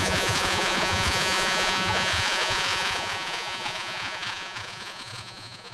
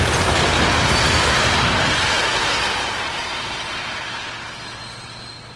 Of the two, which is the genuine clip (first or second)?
second